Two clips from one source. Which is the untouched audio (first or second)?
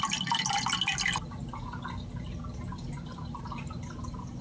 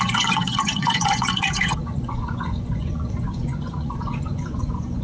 first